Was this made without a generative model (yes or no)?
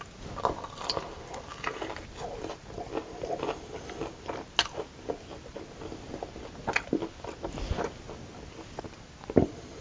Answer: yes